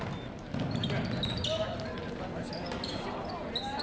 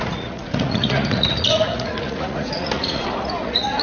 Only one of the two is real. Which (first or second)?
first